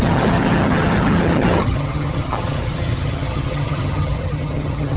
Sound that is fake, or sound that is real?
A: fake